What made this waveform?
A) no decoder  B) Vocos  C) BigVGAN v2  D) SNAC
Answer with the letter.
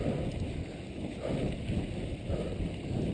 A